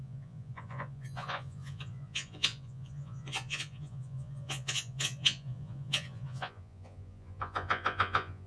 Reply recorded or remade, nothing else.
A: remade